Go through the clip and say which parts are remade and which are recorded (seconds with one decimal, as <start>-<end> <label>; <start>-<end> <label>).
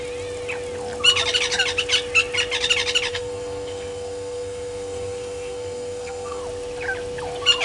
0.0-3.1 recorded; 3.1-6.4 remade; 6.4-7.6 recorded